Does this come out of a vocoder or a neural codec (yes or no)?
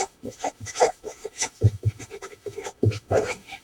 yes